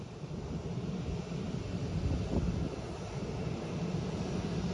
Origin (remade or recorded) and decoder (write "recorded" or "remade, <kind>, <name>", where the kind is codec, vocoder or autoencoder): recorded